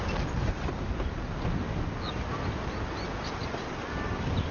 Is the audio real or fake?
real